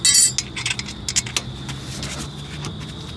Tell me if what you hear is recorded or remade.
recorded